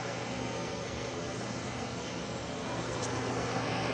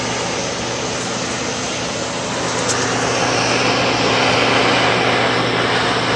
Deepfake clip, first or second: first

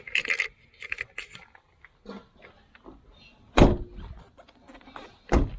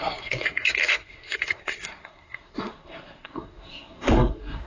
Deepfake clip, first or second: second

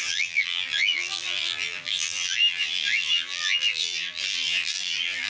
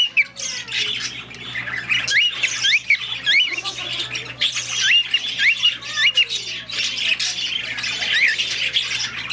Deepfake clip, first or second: first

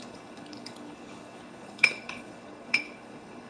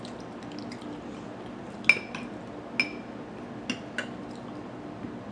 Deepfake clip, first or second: first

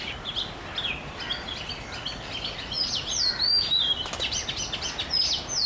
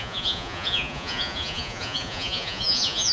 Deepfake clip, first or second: second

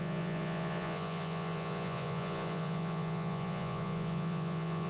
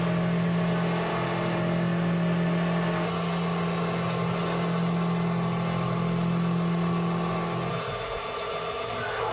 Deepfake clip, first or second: first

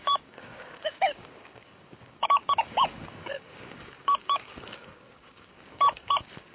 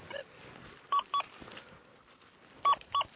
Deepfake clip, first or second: first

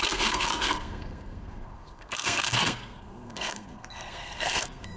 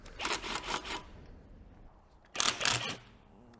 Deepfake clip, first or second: first